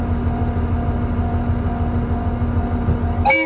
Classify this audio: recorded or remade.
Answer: recorded